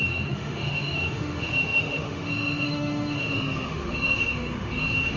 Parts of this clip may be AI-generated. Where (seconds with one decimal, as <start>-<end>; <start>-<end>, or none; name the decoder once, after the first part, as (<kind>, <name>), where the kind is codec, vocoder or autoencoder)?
0.0-5.2 (autoencoder, DAC-VAE)

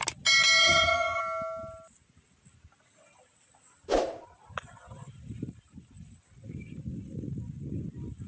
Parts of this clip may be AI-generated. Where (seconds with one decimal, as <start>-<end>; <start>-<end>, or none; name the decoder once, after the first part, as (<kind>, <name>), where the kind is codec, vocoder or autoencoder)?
0.6-1.2 (vocoder, HiFi-GAN)

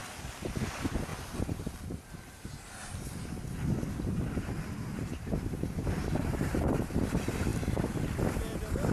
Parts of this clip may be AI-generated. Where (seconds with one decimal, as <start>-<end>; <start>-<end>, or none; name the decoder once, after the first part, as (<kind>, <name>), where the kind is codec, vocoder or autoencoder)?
4.8-6.5 (vocoder, BigVGAN v2)

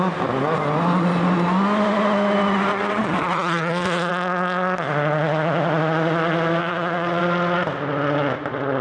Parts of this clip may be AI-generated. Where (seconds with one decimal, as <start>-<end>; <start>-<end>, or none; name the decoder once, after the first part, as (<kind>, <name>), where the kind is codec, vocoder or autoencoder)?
2.7-4.1 (vocoder, WaveNeXt); 6.6-7.2

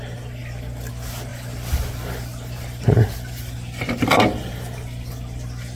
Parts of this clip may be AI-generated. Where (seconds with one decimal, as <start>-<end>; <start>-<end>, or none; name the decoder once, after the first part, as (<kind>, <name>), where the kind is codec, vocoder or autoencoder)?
0.4-0.9 (vocoder, BigVGAN v2)

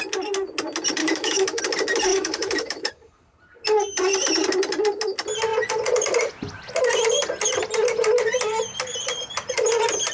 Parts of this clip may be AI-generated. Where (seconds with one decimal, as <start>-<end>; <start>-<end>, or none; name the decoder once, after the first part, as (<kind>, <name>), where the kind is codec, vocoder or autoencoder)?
1.0-1.6 (autoencoder, DAC-VAE); 2.1-2.9

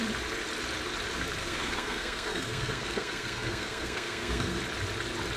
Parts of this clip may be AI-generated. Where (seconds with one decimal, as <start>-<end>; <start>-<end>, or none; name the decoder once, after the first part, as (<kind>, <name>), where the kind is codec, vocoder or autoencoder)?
1.4-4.6 (codec, SNAC)